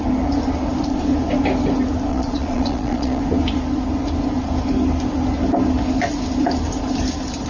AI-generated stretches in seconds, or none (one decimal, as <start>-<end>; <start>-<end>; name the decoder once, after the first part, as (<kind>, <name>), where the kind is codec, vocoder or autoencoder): 2.1-3.2 (vocoder, Vocos)